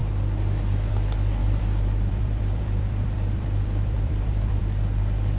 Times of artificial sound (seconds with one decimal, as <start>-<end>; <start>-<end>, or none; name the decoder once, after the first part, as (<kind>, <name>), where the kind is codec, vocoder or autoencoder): 1.4-4.6 (vocoder, BigVGAN v2)